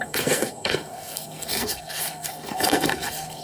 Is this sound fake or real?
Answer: fake